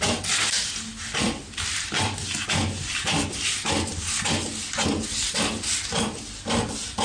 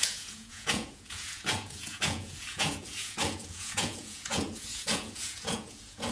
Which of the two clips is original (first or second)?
first